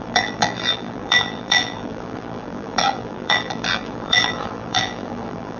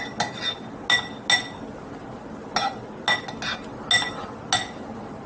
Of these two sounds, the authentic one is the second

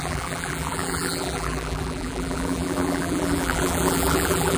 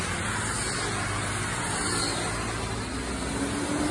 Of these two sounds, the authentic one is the second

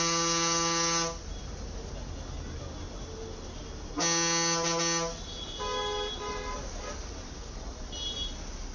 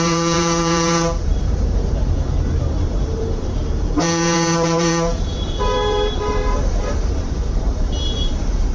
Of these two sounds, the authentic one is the first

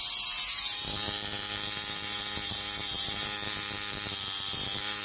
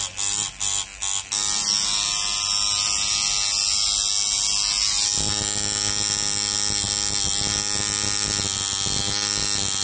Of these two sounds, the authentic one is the second